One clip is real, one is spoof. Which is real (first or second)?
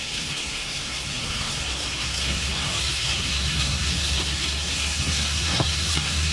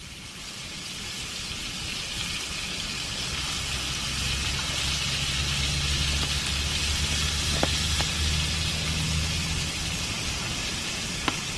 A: second